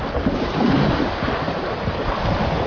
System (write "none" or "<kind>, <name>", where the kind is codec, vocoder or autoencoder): none